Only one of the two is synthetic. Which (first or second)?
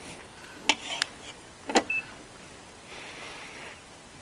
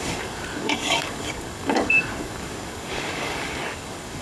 second